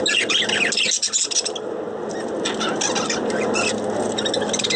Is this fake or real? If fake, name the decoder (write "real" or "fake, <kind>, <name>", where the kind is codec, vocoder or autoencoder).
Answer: real